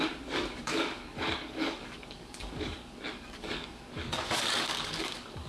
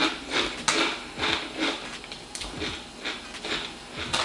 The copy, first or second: first